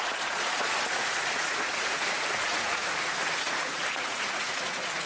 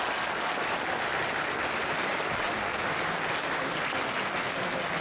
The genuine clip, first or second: second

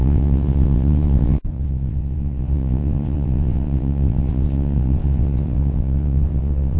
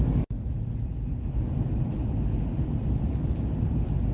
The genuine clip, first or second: second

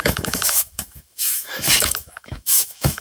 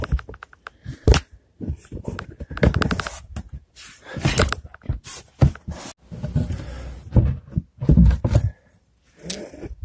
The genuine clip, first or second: second